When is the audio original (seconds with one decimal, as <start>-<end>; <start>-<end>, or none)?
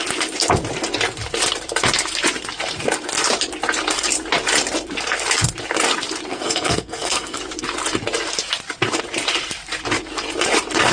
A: 0.0-6.3; 7.4-10.9